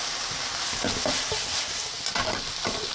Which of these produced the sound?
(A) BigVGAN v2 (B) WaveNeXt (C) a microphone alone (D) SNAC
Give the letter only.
A